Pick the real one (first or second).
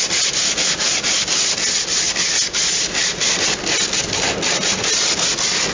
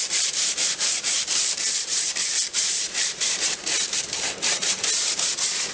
first